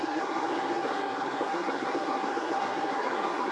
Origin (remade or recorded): remade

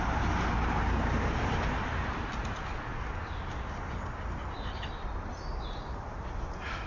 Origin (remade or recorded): recorded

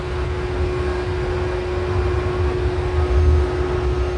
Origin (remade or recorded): recorded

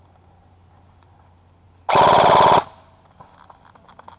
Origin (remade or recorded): recorded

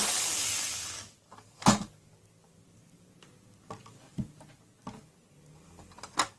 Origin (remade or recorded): recorded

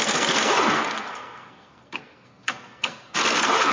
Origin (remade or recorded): remade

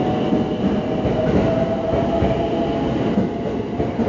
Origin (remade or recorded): recorded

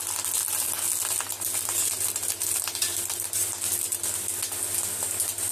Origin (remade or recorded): recorded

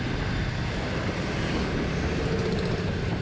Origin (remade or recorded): recorded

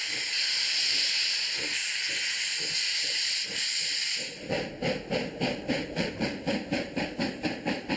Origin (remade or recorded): remade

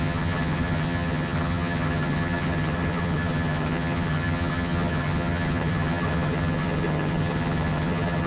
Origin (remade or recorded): remade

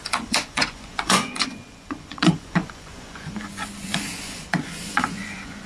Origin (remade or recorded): remade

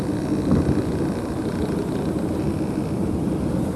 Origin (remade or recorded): recorded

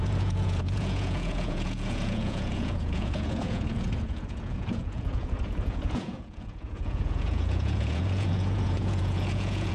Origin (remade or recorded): remade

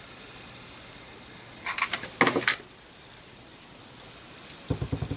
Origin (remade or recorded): recorded